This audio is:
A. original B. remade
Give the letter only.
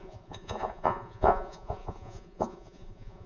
B